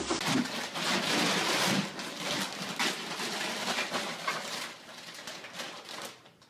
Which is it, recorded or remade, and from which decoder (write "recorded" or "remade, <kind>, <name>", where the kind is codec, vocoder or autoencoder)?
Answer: recorded